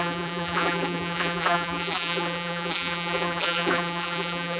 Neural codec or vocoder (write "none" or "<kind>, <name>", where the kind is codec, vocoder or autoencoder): vocoder, BigVGAN v2